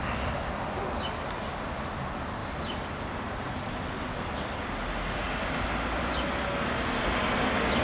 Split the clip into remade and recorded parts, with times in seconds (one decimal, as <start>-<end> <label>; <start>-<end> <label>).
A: 0.0-7.8 recorded